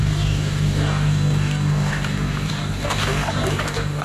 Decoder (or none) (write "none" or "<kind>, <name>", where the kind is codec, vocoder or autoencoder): codec, DAC